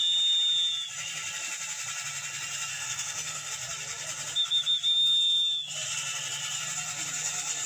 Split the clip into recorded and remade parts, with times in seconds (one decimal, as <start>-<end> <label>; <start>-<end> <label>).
0.0-2.7 recorded; 2.7-3.5 remade; 3.5-7.7 recorded